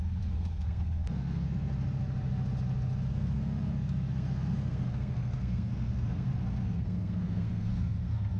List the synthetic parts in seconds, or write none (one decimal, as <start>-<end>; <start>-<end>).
0.0-1.7; 3.1-8.4